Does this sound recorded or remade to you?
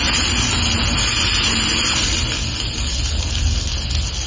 recorded